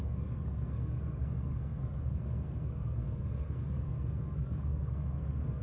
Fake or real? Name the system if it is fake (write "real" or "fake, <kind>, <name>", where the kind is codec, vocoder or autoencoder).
fake, codec, SNAC